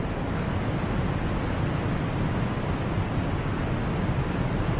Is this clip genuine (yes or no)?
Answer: yes